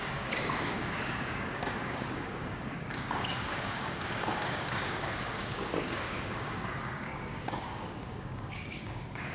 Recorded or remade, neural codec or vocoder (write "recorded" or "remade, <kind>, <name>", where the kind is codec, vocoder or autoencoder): remade, codec, DAC